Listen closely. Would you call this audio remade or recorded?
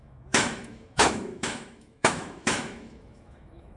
remade